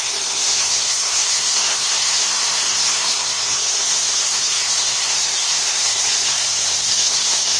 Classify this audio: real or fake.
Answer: fake